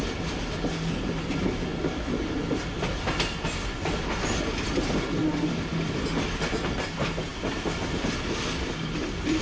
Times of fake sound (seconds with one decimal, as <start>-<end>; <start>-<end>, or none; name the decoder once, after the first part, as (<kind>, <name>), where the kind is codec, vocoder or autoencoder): none